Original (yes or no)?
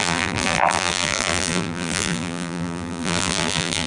no